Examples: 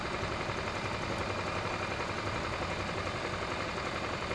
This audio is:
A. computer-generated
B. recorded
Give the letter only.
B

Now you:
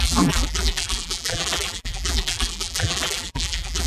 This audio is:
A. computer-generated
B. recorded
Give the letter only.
A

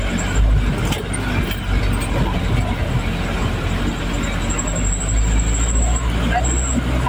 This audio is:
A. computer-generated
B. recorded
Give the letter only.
B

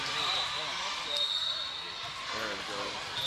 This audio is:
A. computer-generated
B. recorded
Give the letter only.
B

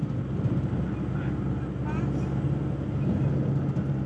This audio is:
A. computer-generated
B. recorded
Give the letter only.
B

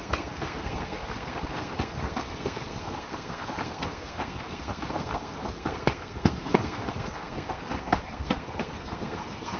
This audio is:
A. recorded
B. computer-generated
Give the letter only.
B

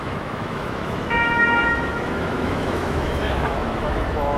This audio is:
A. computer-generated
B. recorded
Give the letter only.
A